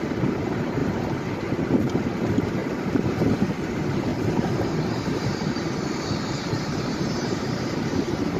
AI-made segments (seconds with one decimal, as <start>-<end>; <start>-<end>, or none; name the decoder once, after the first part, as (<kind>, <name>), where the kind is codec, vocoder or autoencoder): 0.0-8.4 (vocoder, BigVGAN v2)